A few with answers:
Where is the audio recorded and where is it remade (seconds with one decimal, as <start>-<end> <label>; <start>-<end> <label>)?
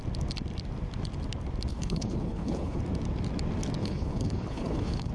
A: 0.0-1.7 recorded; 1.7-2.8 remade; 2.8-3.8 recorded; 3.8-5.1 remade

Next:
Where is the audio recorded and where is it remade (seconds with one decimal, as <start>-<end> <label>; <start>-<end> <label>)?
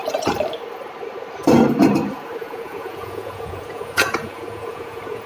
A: 0.0-2.4 recorded; 2.4-5.3 remade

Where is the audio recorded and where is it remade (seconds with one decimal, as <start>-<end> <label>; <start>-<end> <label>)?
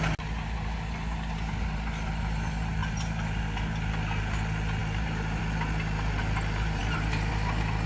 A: 0.0-7.9 recorded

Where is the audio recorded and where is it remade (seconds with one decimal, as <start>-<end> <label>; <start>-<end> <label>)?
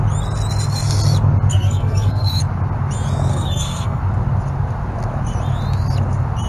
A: 0.0-1.5 recorded; 1.5-2.4 remade; 2.4-3.3 recorded; 3.3-4.0 remade; 4.0-6.5 recorded